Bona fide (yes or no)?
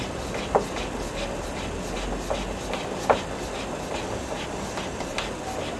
yes